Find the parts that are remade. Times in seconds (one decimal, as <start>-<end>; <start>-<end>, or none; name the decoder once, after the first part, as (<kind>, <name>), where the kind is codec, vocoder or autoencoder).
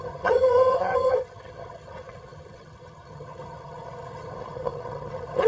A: 0.0-5.5 (vocoder, HiFi-GAN)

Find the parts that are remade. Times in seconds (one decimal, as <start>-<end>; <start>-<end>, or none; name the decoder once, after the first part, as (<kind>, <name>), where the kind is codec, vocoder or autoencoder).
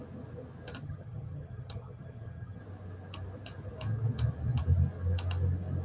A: 0.8-2.6 (vocoder, HiFi-GAN)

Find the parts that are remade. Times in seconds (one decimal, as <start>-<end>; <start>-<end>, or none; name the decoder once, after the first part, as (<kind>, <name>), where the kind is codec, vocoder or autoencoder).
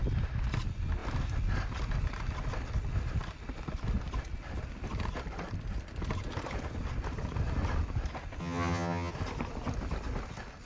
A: 8.4-9.1 (vocoder, HiFi-GAN)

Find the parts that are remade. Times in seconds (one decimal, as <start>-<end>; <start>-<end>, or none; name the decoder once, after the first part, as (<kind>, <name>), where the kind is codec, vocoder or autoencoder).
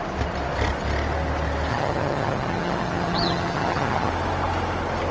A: 1.7-4.1 (vocoder, HiFi-GAN)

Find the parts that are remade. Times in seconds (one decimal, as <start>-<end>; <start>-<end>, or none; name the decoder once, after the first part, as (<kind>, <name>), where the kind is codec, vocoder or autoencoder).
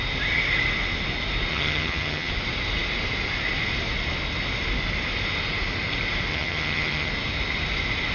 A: 1.5-2.3 (vocoder, HiFi-GAN); 6.3-7.1